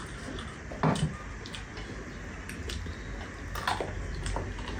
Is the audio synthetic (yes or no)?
no